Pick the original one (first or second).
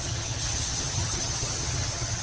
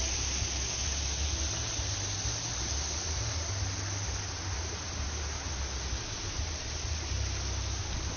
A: second